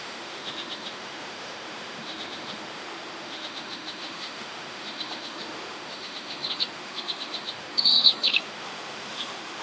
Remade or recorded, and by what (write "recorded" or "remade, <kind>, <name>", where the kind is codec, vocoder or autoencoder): remade, autoencoder, DAC-VAE